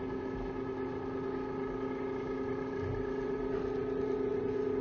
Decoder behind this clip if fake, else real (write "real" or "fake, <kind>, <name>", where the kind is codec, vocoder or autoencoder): real